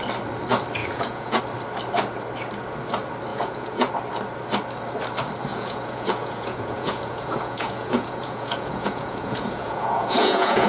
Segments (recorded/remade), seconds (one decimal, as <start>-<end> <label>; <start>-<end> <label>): 0.0-0.8 recorded; 0.8-1.4 remade; 1.4-3.3 recorded; 3.3-3.9 remade; 3.9-5.5 recorded; 5.5-10.7 remade